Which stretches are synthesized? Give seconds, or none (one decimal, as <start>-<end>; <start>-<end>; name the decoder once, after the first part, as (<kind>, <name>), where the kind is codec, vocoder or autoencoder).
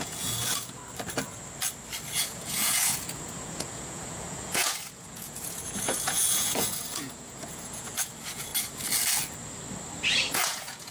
0.0-0.8 (vocoder, Vocos); 2.2-8.5; 10.3-10.9